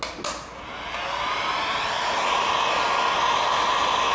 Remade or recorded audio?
recorded